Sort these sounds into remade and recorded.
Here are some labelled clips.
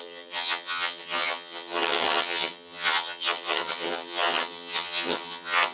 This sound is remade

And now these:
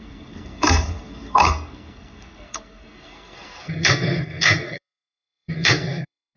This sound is remade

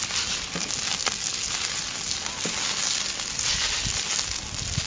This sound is recorded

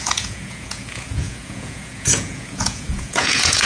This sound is remade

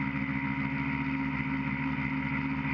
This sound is recorded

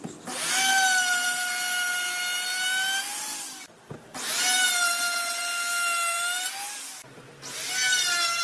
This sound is recorded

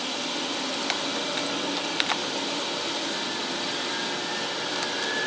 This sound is recorded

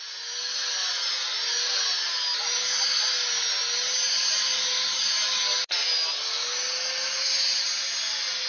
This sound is recorded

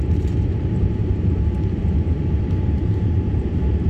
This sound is remade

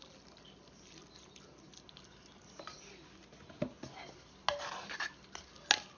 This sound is recorded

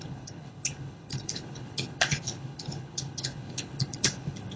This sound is remade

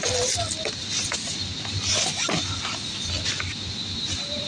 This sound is remade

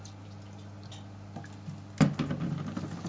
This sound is recorded